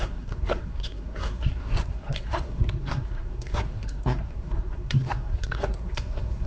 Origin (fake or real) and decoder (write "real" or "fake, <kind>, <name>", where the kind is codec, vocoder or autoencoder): fake, codec, SNAC